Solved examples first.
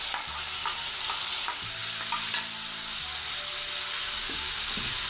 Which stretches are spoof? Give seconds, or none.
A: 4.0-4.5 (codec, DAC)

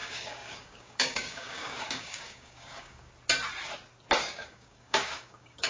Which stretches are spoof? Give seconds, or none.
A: 0.0-3.1 (codec, DAC); 4.2-5.7

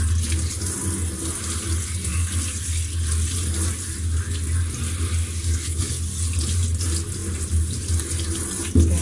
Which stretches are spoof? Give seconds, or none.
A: 5.2-5.8 (codec, DAC)

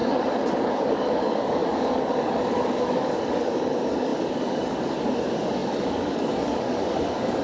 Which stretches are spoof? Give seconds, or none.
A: 0.0-7.4 (codec, DAC)